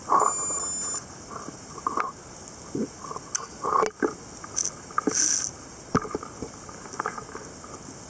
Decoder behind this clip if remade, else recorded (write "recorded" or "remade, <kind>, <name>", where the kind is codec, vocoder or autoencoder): recorded